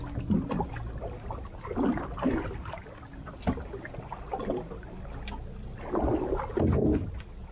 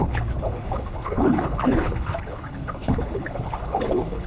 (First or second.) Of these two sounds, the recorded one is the first